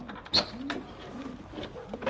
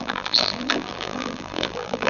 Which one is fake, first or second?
second